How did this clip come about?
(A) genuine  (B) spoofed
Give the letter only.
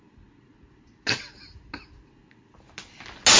A